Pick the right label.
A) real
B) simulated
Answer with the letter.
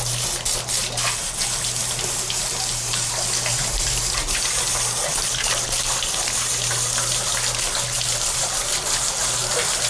A